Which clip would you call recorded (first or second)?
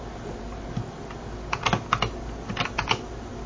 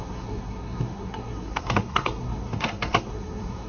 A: first